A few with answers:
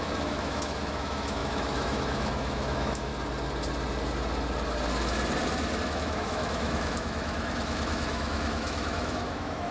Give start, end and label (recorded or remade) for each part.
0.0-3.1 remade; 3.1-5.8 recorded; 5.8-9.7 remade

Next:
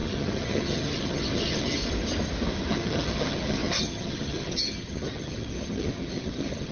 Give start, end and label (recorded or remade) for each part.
0.0-1.8 remade; 1.8-2.7 recorded; 2.7-6.7 remade